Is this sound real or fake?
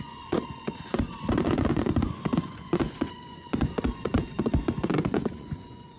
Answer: fake